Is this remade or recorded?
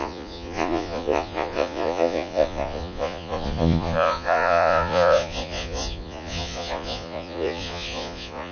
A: remade